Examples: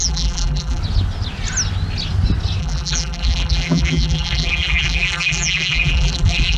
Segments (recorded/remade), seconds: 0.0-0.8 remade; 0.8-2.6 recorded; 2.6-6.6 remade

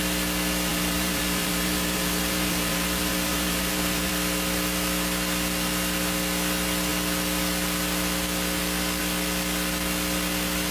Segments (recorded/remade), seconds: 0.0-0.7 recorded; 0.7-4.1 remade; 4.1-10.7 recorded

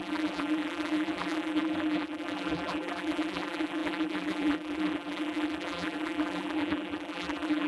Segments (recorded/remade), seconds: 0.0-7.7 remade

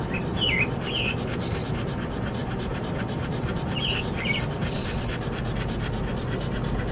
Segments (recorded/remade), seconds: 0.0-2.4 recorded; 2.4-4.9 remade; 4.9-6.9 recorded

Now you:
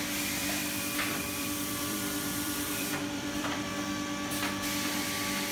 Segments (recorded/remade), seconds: 0.0-0.4 recorded; 0.4-3.7 remade; 3.7-5.5 recorded

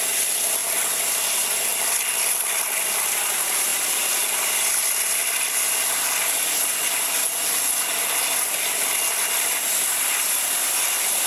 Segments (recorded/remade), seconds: 0.0-0.6 remade; 0.6-1.1 recorded; 1.1-3.7 remade; 3.7-8.0 recorded; 8.0-11.3 remade

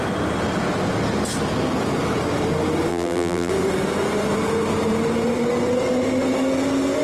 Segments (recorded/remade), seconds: 0.0-2.9 recorded; 2.9-3.5 remade; 3.5-7.0 recorded